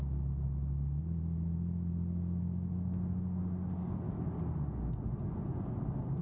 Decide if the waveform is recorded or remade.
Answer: recorded